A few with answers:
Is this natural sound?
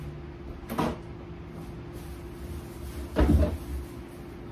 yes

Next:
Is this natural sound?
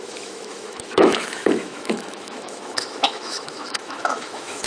no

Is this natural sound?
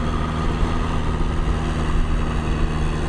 yes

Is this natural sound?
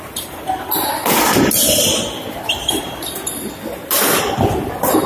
yes